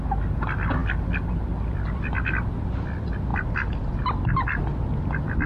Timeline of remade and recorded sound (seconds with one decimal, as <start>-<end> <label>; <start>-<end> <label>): 0.0-5.5 recorded